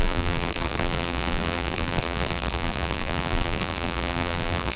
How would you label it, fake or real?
fake